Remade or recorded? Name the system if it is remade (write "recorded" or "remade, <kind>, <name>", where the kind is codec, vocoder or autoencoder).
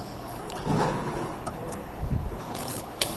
remade, codec, HILCodec